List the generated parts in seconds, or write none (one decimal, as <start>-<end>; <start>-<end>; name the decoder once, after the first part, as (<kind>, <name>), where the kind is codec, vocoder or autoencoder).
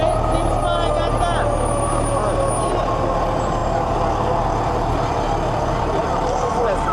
none